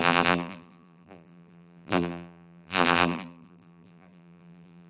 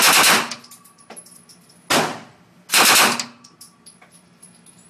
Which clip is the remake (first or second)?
first